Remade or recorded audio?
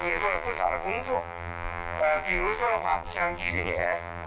remade